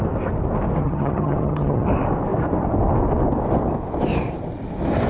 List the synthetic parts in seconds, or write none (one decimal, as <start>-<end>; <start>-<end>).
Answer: 0.8-1.9